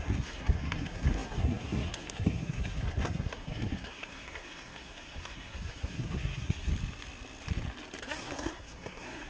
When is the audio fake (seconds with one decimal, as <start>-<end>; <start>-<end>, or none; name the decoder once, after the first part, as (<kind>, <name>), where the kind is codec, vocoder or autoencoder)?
0.0-6.7 (codec, SNAC); 8.0-9.3